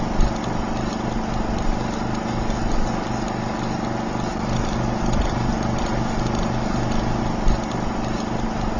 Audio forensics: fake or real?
real